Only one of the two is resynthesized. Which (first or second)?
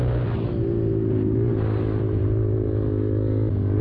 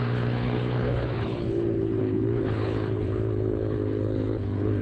second